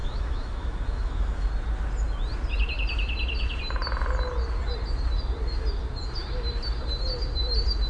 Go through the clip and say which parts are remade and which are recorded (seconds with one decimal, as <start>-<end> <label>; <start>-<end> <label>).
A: 0.0-1.5 remade; 1.5-7.9 recorded